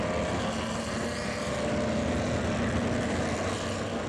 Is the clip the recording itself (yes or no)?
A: yes